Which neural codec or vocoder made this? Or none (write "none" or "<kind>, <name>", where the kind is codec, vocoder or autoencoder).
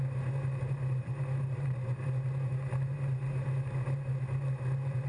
vocoder, BigVGAN v2